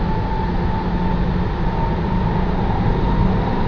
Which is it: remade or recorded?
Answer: recorded